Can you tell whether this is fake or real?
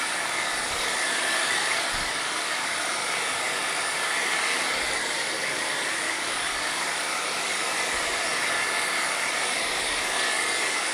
fake